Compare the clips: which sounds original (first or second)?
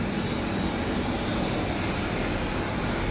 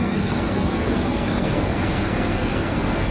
first